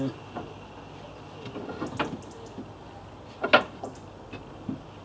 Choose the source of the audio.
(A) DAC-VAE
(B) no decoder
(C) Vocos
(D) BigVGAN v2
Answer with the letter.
B